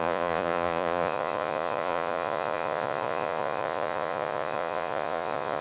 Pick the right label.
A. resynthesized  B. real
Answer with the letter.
A